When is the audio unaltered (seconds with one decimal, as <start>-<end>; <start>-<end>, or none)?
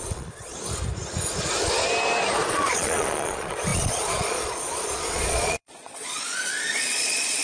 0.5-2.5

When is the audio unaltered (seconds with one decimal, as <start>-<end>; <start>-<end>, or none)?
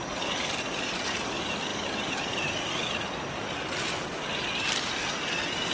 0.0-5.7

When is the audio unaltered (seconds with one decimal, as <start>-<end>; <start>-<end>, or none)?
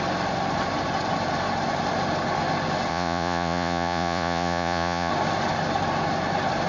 0.0-2.9; 5.1-6.7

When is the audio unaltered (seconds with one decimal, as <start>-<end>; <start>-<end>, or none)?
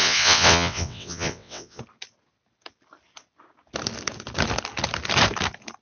1.8-5.8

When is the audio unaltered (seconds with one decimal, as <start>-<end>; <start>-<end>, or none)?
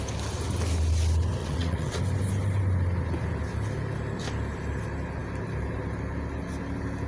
0.0-1.4; 2.0-7.1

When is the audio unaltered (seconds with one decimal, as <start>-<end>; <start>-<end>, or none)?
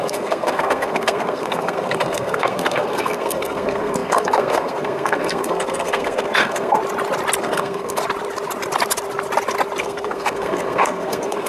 6.8-7.4; 8.0-9.8